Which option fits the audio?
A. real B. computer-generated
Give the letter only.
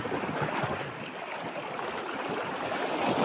A